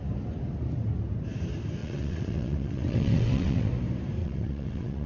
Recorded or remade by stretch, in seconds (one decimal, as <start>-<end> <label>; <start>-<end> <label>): 0.0-1.8 recorded; 1.8-3.7 remade; 3.7-4.2 recorded; 4.2-5.1 remade